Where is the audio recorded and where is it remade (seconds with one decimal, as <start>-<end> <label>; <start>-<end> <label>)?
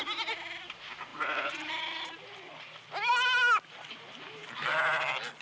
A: 0.0-5.4 recorded